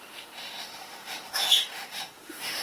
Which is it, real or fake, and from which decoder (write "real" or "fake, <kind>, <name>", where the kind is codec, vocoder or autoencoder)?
fake, autoencoder, DAC-VAE